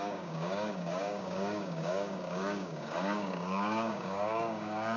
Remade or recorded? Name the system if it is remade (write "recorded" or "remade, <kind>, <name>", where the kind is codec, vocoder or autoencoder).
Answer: remade, codec, DAC